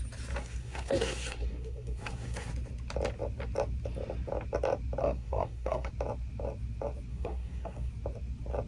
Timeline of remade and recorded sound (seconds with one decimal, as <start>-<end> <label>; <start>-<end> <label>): 0.0-0.4 recorded; 0.4-2.5 remade; 2.5-5.0 recorded; 5.0-5.9 remade; 5.9-7.1 recorded; 7.1-7.9 remade; 7.9-8.7 recorded